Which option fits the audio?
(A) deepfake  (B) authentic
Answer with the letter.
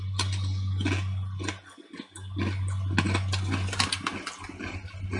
B